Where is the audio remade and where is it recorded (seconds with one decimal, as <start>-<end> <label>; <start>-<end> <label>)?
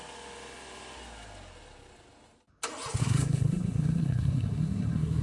0.0-3.0 recorded; 3.0-5.2 remade